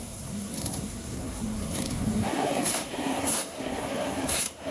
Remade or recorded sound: remade